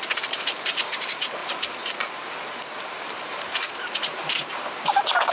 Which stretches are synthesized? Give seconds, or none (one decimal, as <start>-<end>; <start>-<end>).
0.0-5.3